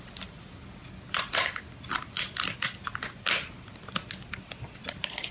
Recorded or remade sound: recorded